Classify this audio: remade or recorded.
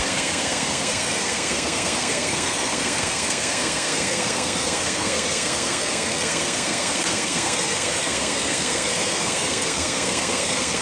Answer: remade